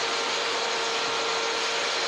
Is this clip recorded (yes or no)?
yes